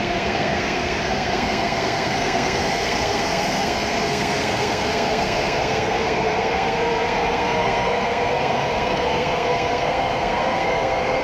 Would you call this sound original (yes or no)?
no